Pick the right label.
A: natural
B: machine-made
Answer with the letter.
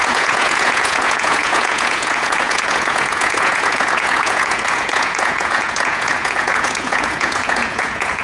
B